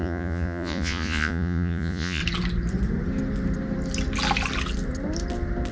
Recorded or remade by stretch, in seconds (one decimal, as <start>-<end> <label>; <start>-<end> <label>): 0.0-2.2 remade; 2.2-5.7 recorded

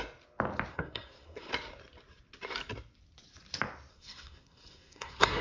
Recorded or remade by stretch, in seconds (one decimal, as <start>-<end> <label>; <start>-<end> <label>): 0.0-0.7 recorded; 0.7-1.5 remade; 1.5-3.9 recorded; 3.9-5.4 remade

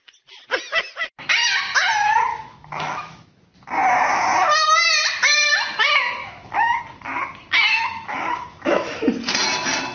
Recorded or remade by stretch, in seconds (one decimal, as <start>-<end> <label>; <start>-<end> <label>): 0.0-2.3 recorded; 2.3-3.4 remade; 3.4-6.2 recorded; 6.2-6.8 remade; 6.8-7.7 recorded; 7.7-9.0 remade; 9.0-9.9 recorded